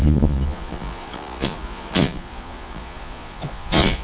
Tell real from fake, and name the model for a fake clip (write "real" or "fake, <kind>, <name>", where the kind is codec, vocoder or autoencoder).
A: fake, vocoder, Vocos